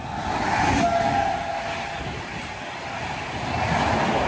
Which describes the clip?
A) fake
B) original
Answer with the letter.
B